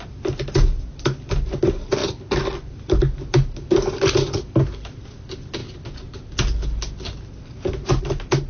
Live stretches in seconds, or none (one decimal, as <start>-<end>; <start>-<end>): 0.0-8.5